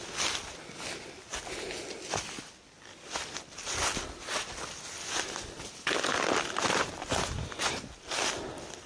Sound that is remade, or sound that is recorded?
recorded